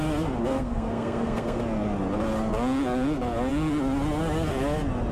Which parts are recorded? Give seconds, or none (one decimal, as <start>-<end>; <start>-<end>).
0.0-0.5; 1.6-5.1